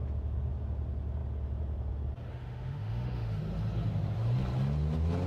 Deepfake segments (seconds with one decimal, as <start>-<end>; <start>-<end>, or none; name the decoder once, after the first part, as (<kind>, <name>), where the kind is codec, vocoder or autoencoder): 2.3-3.4 (autoencoder, DAC-VAE)